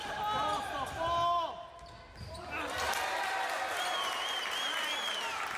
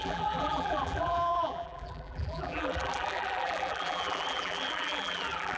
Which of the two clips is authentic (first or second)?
first